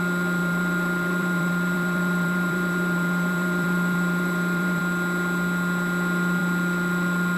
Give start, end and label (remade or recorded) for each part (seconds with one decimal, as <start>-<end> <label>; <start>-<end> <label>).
0.0-0.4 recorded; 0.4-4.8 remade; 4.8-7.4 recorded